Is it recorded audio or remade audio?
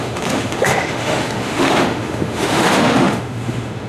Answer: remade